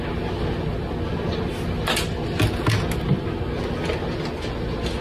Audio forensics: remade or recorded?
recorded